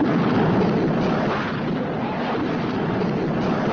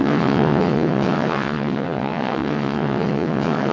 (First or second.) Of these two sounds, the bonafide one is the first